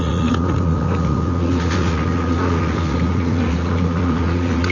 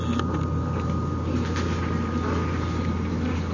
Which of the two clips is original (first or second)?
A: second